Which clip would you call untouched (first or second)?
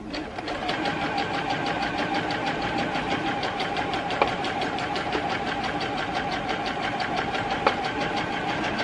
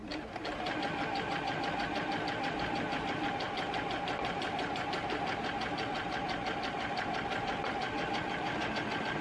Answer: second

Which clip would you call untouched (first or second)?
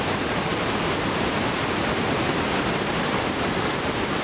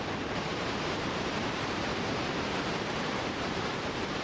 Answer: first